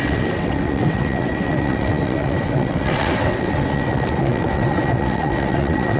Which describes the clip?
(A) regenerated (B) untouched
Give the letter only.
A